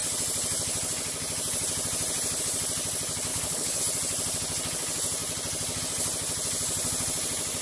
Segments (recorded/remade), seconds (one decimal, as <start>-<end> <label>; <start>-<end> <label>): 0.0-3.3 recorded; 3.3-3.8 remade; 3.8-7.6 recorded

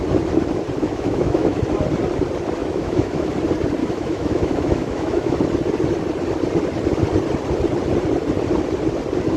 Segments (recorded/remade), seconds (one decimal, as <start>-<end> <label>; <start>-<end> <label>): 0.0-0.8 recorded; 0.8-1.6 remade; 1.6-2.6 recorded; 2.6-3.3 remade; 3.3-3.8 recorded; 3.8-5.4 remade; 5.4-9.4 recorded